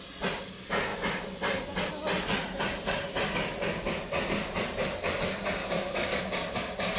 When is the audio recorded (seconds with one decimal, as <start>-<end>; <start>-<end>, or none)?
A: 0.0-5.6; 6.2-7.0